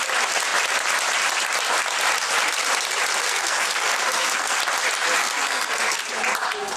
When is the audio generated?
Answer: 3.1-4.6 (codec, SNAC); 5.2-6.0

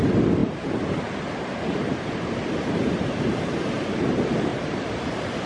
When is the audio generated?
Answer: 0.4-3.7 (vocoder, BigVGAN v2); 4.5-5.1